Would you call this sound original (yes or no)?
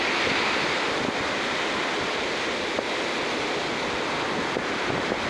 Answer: yes